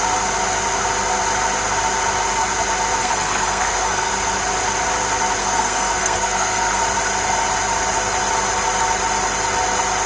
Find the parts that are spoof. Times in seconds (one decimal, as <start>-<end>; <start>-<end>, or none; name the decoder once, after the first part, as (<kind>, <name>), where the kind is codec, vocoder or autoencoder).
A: 3.0-4.1 (codec, SNAC); 5.4-6.8